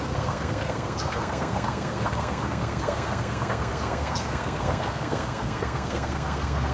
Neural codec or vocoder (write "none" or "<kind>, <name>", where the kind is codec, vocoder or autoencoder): codec, SNAC